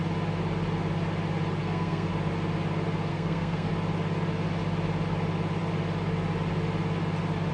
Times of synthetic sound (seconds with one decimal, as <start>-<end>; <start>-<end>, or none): 1.6-2.1; 3.1-3.7